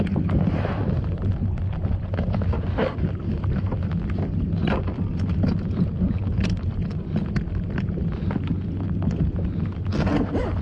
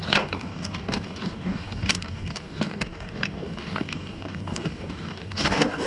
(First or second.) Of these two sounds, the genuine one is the first